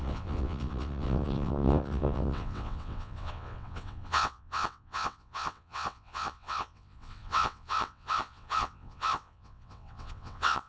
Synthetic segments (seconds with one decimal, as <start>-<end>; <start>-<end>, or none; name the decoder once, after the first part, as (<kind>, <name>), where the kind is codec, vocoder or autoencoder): 0.0-10.7 (vocoder, WaveNeXt)